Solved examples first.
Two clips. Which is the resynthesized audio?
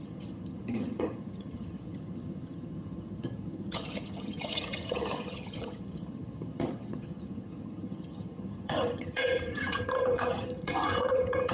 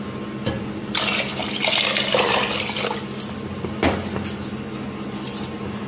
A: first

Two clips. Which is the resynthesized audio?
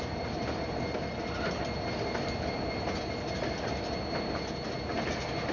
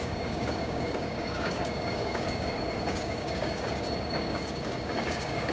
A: second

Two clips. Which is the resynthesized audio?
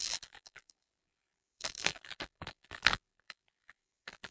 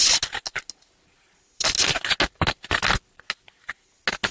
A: first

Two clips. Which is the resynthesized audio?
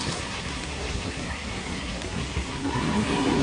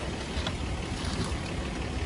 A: first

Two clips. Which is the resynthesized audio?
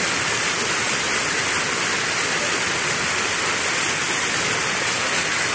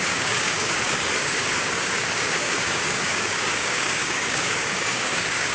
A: second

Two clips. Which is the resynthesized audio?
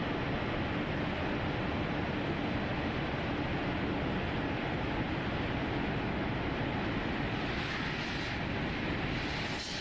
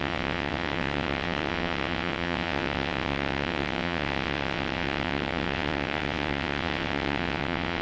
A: second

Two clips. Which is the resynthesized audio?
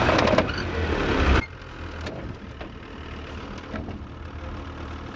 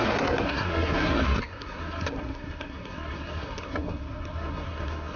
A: second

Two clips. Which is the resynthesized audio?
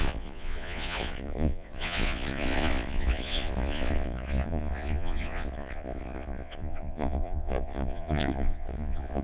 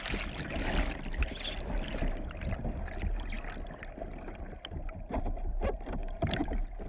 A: first